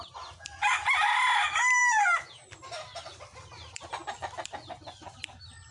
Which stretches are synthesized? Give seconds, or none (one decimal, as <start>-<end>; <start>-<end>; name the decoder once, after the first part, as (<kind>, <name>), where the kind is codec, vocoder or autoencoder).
none